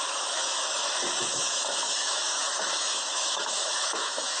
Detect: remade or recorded remade